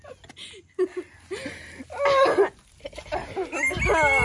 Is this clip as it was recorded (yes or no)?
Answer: yes